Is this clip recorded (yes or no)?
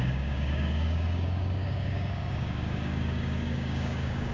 no